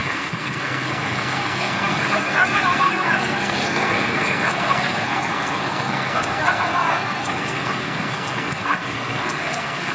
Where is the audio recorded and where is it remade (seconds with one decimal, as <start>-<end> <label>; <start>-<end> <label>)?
0.0-9.9 remade